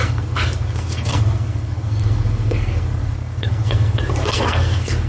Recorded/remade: remade